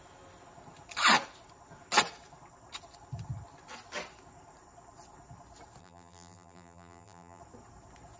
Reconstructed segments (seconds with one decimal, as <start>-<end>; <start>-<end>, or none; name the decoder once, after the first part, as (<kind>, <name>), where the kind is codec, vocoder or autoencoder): 5.8-7.4 (vocoder, BigVGAN v2)